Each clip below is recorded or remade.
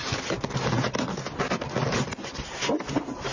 recorded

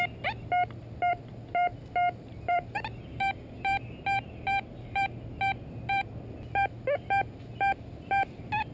recorded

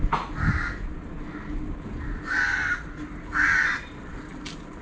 recorded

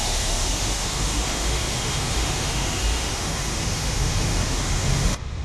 remade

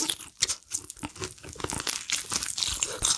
recorded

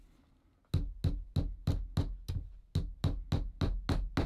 recorded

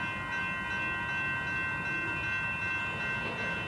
recorded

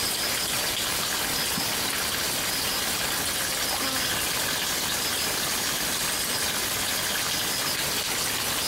recorded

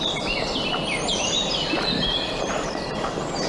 recorded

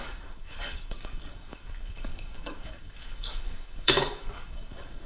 remade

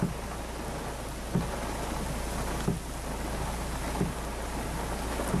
recorded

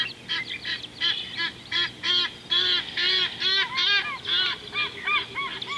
recorded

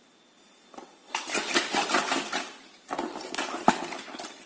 recorded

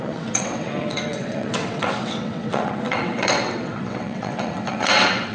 remade